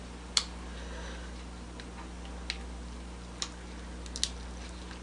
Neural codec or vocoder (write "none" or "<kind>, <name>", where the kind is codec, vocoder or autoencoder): none